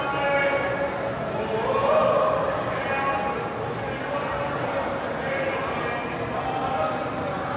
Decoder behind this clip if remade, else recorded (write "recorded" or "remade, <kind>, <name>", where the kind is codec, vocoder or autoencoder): recorded